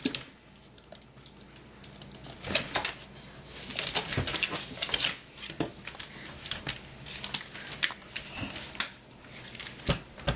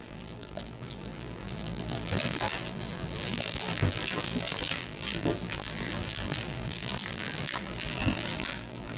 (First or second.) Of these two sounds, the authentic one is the first